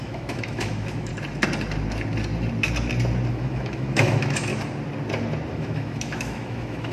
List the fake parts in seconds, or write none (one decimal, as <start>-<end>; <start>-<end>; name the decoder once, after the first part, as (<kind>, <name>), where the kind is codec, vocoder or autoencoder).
0.0-1.1 (autoencoder, DAC-VAE); 3.3-4.5; 5.5-6.9